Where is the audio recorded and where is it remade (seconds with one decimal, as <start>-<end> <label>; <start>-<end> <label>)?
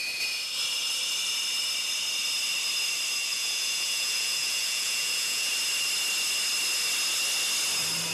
0.0-3.3 recorded; 3.3-5.5 remade; 5.5-8.1 recorded